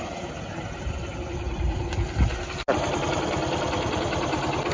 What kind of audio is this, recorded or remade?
recorded